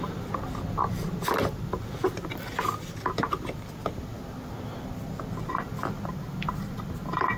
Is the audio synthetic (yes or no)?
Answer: no